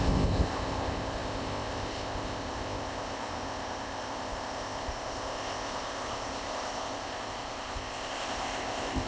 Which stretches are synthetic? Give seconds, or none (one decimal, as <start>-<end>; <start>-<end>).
0.0-9.1